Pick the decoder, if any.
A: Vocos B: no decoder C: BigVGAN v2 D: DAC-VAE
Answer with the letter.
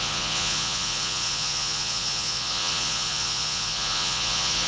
A